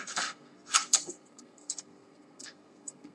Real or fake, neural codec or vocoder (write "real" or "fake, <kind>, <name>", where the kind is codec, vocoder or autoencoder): fake, codec, SNAC